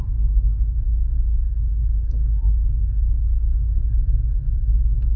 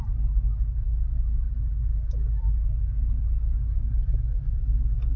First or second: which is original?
second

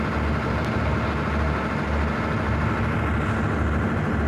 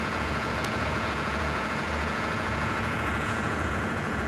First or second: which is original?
first